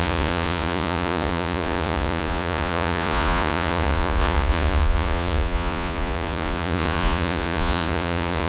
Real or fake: fake